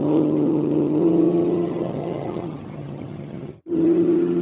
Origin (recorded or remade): remade